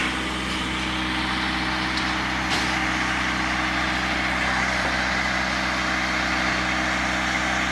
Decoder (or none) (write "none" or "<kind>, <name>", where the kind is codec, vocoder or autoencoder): none